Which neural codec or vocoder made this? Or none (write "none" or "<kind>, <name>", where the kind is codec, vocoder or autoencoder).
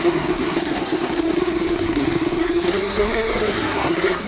codec, SNAC